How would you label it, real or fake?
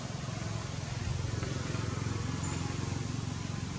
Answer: real